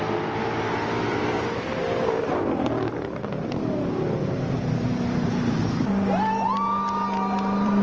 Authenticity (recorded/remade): remade